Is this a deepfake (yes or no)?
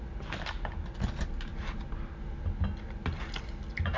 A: no